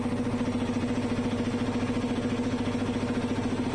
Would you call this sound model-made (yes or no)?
no